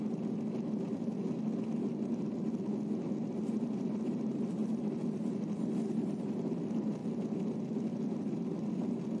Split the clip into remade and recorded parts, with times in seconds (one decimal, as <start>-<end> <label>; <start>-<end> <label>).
0.0-9.2 recorded